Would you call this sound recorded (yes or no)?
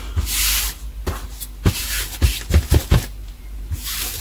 yes